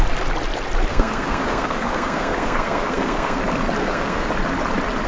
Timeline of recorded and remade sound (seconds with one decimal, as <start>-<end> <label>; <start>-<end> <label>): 0.0-0.9 recorded; 0.9-3.4 remade; 3.4-3.8 recorded; 3.8-4.3 remade; 4.3-5.1 recorded